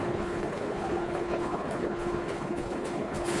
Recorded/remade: remade